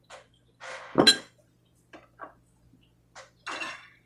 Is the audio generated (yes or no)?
no